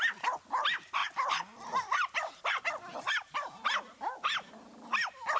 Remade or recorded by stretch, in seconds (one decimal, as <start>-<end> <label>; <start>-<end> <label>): 0.0-5.4 recorded